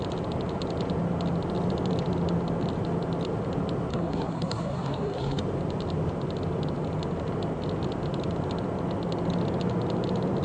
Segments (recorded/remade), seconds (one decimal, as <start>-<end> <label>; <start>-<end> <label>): 0.0-3.9 recorded; 3.9-5.4 remade; 5.4-10.4 recorded